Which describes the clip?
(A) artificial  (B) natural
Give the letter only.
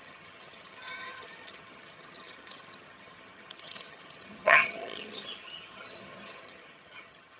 A